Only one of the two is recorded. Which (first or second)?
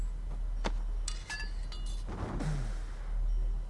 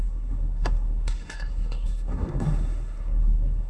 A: first